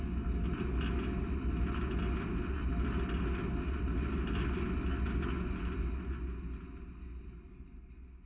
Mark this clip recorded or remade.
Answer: recorded